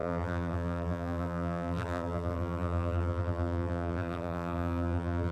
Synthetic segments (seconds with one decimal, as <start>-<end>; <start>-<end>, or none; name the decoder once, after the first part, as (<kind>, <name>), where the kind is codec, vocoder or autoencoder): 0.0-5.3 (vocoder, BigVGAN v2)

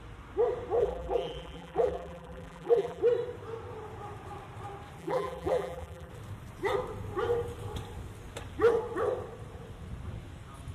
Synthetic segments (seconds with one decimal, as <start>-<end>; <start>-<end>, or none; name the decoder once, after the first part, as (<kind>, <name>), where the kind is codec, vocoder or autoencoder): 0.8-3.0 (vocoder, BigVGAN v2); 5.0-6.1